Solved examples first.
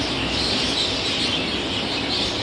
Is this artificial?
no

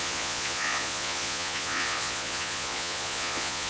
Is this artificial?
yes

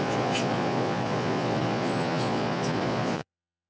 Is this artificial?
yes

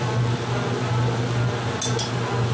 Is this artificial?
no